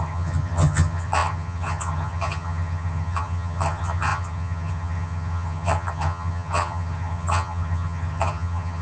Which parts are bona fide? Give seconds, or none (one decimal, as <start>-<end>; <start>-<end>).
none